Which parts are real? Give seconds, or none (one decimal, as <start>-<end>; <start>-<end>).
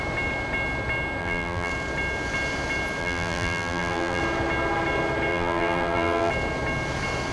0.0-1.2; 1.7-3.0; 4.2-5.3; 6.3-7.3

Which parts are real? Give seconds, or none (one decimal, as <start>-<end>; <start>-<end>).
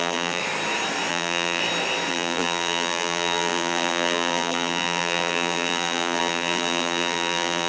0.4-1.1; 1.6-2.1